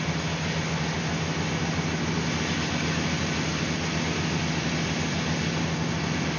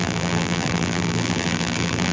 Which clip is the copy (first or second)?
second